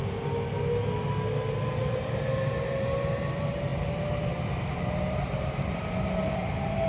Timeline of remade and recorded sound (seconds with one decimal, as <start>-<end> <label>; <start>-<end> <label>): 0.0-1.6 recorded; 1.6-6.9 remade